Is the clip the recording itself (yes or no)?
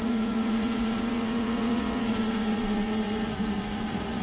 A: no